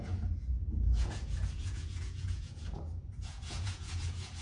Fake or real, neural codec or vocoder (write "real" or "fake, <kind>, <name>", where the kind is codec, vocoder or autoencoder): fake, vocoder, Vocos